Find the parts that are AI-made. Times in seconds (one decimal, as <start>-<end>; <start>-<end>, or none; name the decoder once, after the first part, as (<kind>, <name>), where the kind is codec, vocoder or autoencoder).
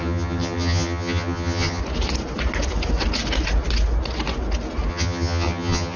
0.0-1.8 (vocoder, HiFi-GAN); 4.9-6.0